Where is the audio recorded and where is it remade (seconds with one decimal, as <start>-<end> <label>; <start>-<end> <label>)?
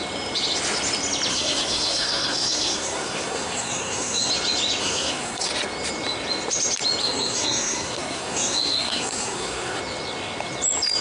0.0-1.3 recorded; 1.3-4.3 remade; 4.3-4.8 recorded; 4.8-5.5 remade; 5.5-7.0 recorded; 7.0-9.8 remade; 9.8-11.0 recorded